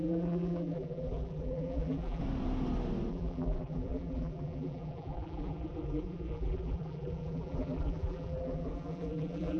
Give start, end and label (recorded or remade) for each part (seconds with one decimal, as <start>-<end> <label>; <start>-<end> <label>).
0.0-2.2 remade; 2.2-3.1 recorded; 3.1-9.6 remade